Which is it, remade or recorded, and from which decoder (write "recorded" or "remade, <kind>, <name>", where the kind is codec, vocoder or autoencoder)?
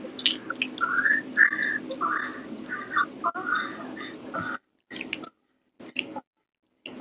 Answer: recorded